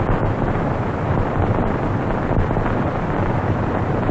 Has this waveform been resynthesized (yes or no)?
no